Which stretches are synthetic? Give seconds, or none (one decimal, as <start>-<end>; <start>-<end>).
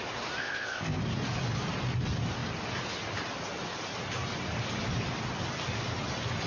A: 0.4-1.0